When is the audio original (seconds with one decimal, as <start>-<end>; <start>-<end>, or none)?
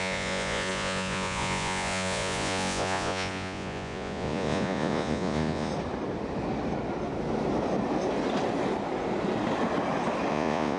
5.7-10.3